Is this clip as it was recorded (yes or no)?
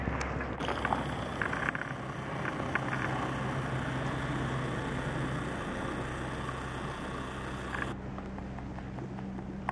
yes